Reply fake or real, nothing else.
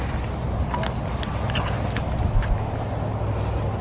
real